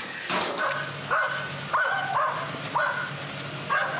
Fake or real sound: real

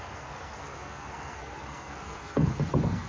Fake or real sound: fake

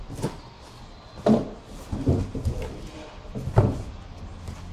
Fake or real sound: real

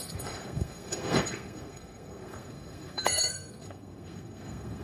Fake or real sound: fake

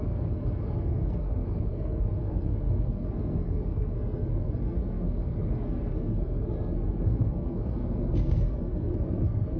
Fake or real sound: fake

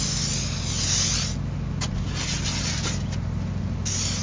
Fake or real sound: real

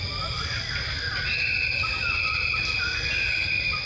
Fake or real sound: real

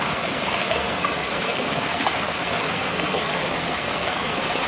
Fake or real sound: fake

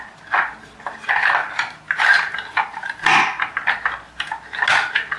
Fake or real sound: real